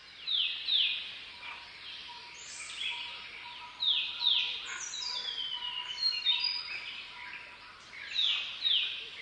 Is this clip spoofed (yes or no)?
no